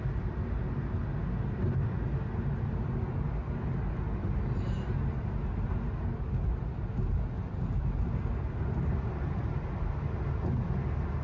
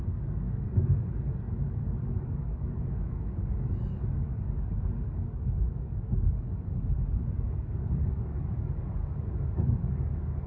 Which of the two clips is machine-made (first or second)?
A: second